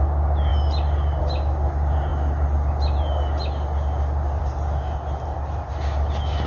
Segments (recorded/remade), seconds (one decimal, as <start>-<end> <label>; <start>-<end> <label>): 0.0-6.5 recorded